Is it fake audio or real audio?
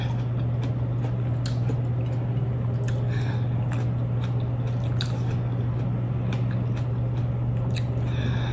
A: real